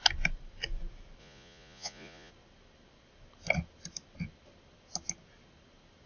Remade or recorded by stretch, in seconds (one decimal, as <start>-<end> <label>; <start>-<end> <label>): 0.0-1.2 recorded; 1.2-2.3 remade; 2.3-6.1 recorded